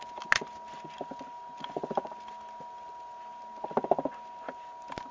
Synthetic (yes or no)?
no